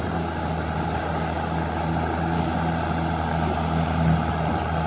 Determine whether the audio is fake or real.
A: real